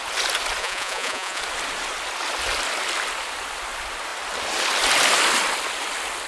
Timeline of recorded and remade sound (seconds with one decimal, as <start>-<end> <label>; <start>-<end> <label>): 0.0-0.6 recorded; 0.6-1.4 remade; 1.4-6.3 recorded